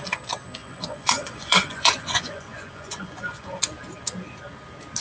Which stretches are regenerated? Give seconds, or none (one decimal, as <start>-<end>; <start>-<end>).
0.6-3.6